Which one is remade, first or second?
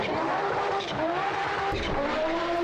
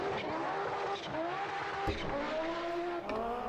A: first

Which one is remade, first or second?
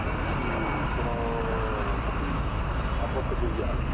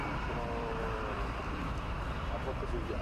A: second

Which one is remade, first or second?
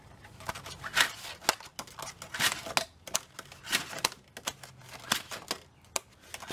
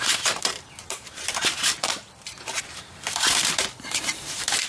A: second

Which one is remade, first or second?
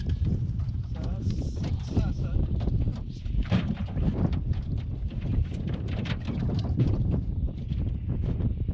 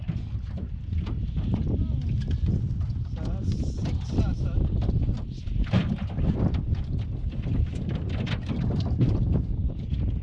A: first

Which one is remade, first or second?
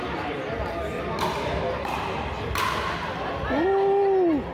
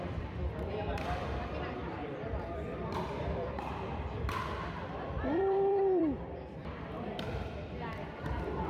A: second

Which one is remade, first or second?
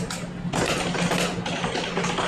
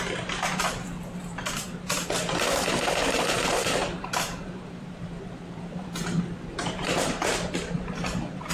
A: second